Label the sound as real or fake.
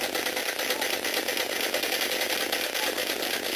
real